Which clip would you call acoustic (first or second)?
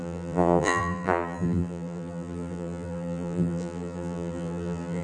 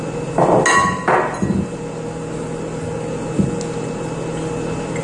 second